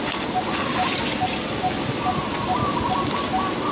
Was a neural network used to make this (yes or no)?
no